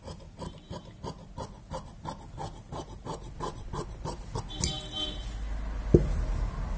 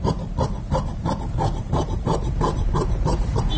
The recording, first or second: first